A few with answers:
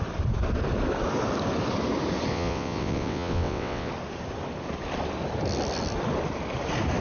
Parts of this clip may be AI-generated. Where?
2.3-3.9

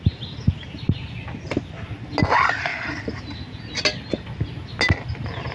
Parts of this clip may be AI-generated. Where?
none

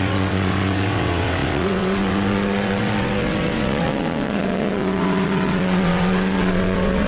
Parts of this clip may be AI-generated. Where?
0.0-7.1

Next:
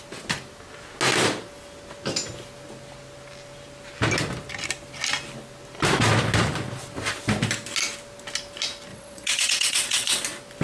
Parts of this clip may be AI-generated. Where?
8.9-10.2

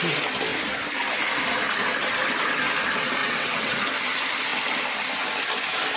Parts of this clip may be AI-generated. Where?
3.2-3.8

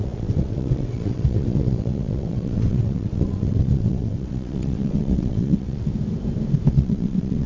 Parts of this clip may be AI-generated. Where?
0.0-5.9; 6.7-7.5